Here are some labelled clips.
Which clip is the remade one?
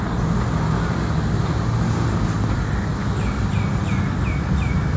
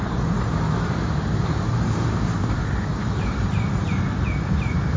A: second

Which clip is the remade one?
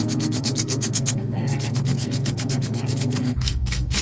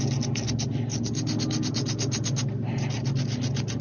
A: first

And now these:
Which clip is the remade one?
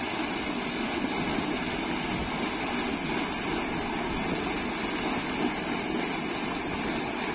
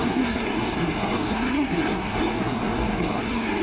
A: second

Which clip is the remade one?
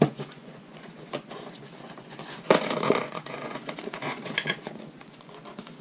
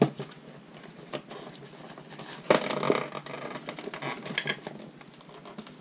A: first